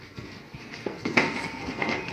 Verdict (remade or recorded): remade